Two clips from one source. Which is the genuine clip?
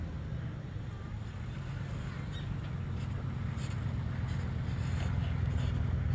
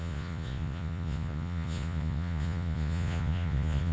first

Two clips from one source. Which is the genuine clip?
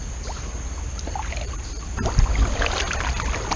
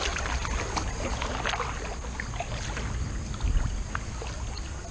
second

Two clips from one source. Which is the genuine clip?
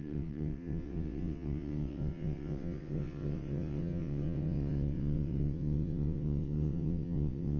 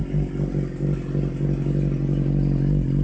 second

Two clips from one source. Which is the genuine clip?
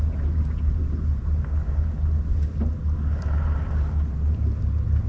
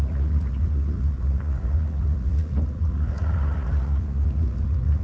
first